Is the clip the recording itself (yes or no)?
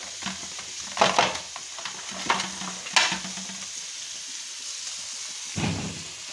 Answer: yes